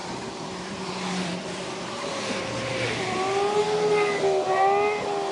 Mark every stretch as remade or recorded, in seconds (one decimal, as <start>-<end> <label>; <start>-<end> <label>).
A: 0.0-2.4 remade; 2.4-5.3 recorded